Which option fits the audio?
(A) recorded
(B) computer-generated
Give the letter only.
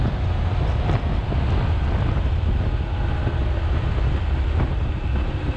A